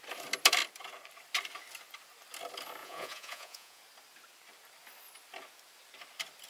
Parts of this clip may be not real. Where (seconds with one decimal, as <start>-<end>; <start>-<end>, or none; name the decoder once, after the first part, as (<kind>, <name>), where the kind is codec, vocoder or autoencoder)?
2.8-3.8 (vocoder, Vocos)

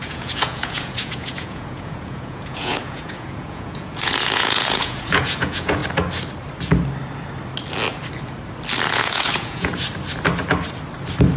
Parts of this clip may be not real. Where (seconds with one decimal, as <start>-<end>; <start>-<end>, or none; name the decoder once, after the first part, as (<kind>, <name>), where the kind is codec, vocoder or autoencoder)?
0.0-5.8 (vocoder, Vocos); 8.9-9.7

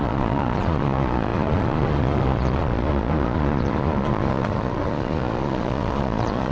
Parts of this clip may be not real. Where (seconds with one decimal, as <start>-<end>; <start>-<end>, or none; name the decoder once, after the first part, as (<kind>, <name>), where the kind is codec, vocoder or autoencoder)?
0.0-6.5 (vocoder, Vocos)

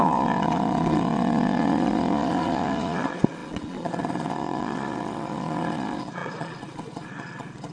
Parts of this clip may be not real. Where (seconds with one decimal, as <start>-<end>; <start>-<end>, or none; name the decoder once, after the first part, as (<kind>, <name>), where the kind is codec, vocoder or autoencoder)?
0.0-7.7 (vocoder, Vocos)

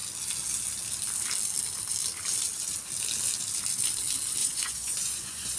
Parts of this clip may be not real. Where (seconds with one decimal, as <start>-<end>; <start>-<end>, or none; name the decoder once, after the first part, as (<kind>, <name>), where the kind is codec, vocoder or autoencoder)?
4.4-5.6 (vocoder, Vocos)

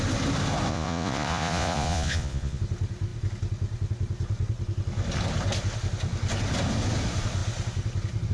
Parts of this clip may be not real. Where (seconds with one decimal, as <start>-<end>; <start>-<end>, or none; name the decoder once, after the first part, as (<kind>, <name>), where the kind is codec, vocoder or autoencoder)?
0.7-2.6 (vocoder, Vocos)

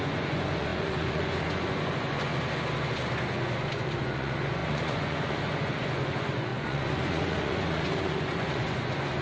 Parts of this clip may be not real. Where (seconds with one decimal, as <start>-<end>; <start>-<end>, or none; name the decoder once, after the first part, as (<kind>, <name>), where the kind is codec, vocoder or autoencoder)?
0.0-2.3 (vocoder, Vocos); 3.3-9.2